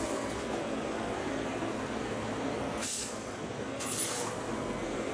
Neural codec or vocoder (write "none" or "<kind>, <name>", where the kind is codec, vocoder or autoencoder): codec, SNAC